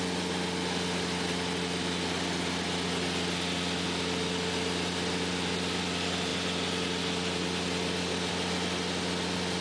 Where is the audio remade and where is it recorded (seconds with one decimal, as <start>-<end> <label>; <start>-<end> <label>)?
0.0-9.6 recorded